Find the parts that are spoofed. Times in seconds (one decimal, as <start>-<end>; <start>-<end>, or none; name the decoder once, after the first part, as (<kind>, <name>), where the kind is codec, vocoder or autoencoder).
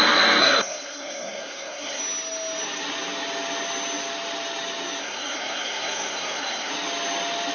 0.4-2.0 (codec, SNAC); 5.0-6.7